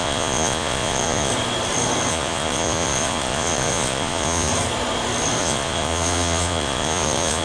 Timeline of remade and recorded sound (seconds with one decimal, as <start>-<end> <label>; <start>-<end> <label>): 0.0-1.3 remade; 1.3-2.1 recorded; 2.1-4.5 remade; 4.5-5.4 recorded; 5.4-7.4 remade